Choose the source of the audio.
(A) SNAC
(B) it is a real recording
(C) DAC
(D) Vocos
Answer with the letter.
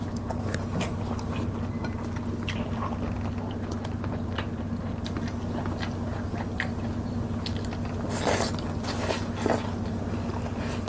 B